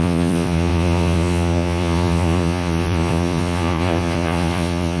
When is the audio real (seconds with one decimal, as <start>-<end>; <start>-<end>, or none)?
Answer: none